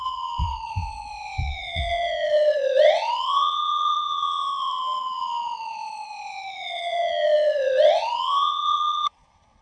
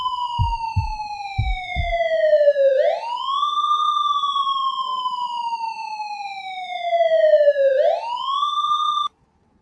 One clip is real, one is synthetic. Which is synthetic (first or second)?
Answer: first